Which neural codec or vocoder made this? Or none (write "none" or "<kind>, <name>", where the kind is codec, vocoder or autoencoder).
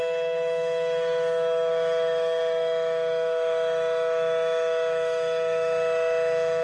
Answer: autoencoder, DAC-VAE